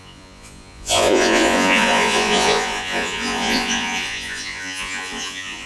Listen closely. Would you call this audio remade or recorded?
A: remade